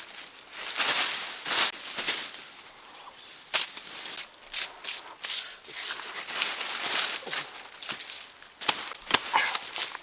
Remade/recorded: recorded